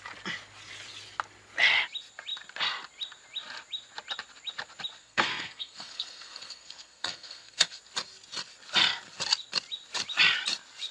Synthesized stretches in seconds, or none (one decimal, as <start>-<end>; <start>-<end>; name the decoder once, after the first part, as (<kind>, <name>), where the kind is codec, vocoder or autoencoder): 5.0-7.8 (codec, SNAC)